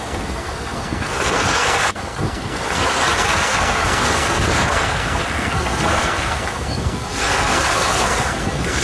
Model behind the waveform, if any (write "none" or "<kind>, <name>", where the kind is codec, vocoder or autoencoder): codec, SNAC